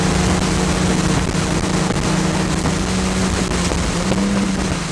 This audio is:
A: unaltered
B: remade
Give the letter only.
A